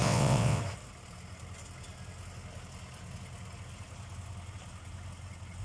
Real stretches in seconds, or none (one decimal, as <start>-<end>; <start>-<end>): 0.6-5.6